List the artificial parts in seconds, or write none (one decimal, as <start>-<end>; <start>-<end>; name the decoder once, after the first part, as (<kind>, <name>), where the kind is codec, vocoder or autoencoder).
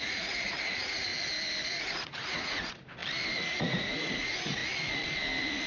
0.0-1.1 (vocoder, Vocos); 1.7-3.0; 3.6-4.6